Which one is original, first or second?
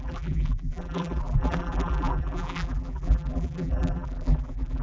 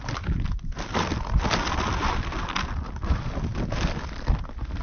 second